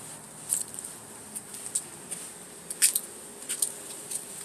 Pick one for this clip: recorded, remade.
recorded